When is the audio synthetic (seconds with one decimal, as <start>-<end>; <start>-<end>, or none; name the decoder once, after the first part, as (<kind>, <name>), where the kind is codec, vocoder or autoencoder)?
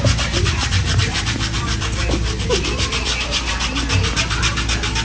1.0-3.5 (vocoder, BigVGAN v2)